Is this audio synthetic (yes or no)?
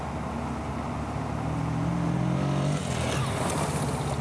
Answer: no